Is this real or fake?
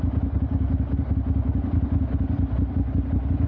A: real